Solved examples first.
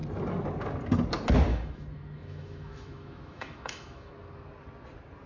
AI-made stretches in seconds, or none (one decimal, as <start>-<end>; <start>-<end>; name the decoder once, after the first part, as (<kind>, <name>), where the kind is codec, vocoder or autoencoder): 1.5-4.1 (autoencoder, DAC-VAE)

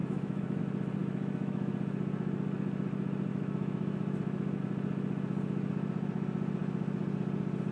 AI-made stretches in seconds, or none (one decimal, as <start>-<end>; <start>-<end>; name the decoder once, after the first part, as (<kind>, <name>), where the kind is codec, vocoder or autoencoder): 0.0-0.6 (autoencoder, DAC-VAE); 1.0-1.7; 3.3-4.6

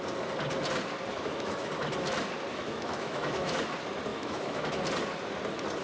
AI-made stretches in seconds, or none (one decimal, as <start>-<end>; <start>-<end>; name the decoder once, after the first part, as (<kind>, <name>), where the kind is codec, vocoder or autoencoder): 1.1-1.7 (autoencoder, DAC-VAE); 2.5-3.6; 4.1-4.7

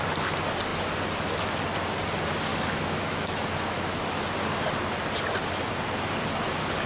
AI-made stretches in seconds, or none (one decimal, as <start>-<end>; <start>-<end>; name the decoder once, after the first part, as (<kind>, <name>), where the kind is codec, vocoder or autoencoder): 2.5-4.2 (autoencoder, DAC-VAE)

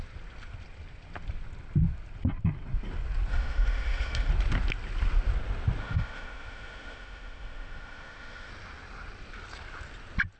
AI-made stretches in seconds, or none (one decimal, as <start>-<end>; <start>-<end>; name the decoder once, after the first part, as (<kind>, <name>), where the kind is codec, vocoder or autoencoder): 3.3-4.3 (autoencoder, DAC-VAE); 5.8-8.5

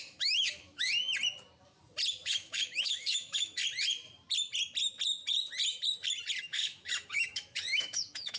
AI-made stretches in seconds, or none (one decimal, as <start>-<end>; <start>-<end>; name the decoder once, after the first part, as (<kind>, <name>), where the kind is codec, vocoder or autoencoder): 0.0-0.9 (autoencoder, DAC-VAE); 2.2-3.6; 6.4-8.4

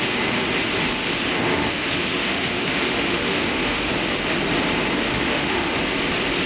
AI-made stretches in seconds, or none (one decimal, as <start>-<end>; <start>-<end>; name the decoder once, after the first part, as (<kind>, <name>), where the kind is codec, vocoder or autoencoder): 1.5-3.9 (autoencoder, DAC-VAE); 5.1-5.8

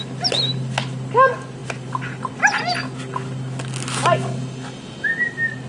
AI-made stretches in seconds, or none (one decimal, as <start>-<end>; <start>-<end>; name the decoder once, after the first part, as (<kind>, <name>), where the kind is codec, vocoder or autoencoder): none